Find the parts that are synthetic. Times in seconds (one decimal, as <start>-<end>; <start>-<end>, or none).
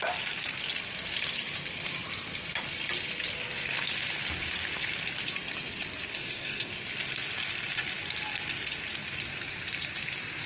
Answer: 6.1-6.7